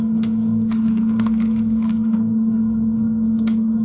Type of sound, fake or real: fake